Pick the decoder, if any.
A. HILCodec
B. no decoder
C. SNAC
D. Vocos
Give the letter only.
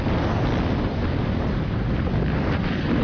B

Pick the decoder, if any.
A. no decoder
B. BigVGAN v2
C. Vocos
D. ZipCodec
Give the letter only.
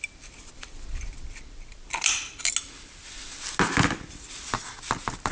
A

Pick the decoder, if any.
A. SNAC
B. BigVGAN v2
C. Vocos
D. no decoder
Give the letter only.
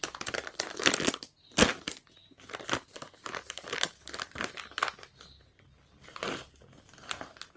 D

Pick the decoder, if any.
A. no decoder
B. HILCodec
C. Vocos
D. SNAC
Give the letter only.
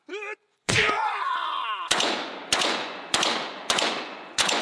C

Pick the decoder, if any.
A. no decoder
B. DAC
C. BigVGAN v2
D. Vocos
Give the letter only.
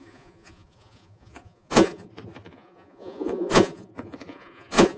D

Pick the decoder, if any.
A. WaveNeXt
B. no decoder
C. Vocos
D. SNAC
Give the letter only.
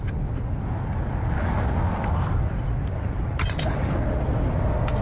B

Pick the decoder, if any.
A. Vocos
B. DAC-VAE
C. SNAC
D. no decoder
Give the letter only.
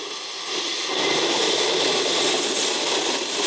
D